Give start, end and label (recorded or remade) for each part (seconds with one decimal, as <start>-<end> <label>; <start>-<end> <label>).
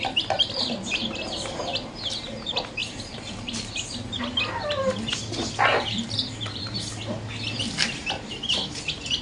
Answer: 0.0-2.8 recorded; 2.8-3.3 remade; 3.3-5.7 recorded; 5.7-7.0 remade; 7.0-9.2 recorded